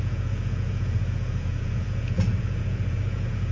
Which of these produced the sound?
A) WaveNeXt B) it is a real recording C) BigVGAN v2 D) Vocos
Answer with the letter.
D